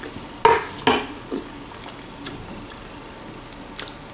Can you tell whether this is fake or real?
real